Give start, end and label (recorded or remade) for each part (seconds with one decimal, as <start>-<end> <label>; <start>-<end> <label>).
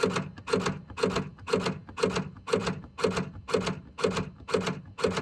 0.0-5.2 recorded